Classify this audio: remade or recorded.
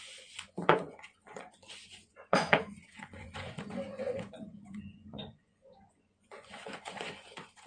remade